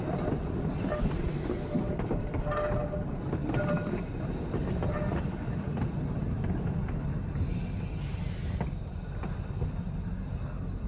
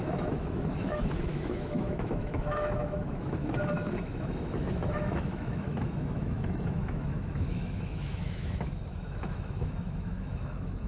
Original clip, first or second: first